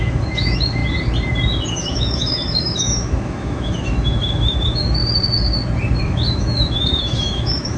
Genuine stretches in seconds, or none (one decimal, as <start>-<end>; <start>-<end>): 0.8-1.7; 5.0-6.0